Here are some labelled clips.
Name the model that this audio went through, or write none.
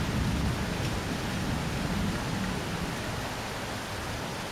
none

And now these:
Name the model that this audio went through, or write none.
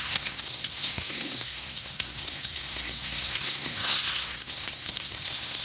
codec, SNAC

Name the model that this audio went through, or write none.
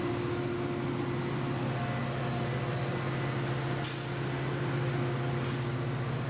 none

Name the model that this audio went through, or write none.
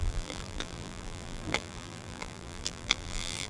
vocoder, BigVGAN v2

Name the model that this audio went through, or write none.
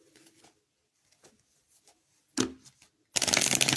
none